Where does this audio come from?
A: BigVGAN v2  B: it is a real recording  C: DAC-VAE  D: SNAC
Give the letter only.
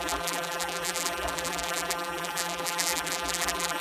A